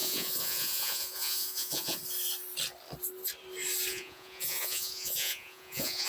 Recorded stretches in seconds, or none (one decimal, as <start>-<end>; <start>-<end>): 2.0-3.9